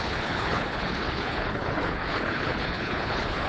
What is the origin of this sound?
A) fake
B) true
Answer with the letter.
A